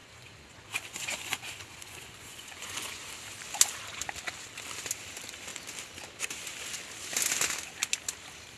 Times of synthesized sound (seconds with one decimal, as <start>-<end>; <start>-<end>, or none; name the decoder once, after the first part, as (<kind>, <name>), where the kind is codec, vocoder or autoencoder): 0.0-3.1 (vocoder, Vocos)